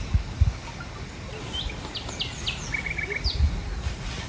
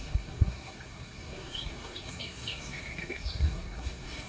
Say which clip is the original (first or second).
first